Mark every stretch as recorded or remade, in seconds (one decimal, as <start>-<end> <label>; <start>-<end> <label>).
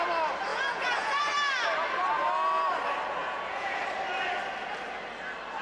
0.0-0.5 recorded; 0.5-1.2 remade; 1.2-3.2 recorded; 3.2-3.8 remade; 3.8-5.6 recorded